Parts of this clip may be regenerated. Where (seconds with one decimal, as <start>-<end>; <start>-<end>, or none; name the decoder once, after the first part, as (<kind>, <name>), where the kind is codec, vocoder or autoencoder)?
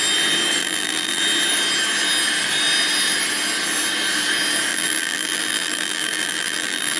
0.6-1.2 (vocoder, BigVGAN v2); 4.7-7.0